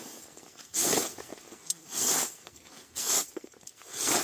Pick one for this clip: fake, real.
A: fake